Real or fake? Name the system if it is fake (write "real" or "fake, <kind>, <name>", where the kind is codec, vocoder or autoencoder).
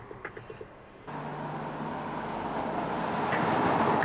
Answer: real